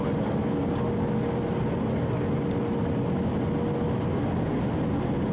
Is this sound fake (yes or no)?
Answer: no